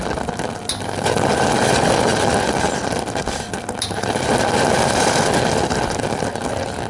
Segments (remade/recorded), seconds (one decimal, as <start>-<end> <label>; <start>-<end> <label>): 0.0-6.9 recorded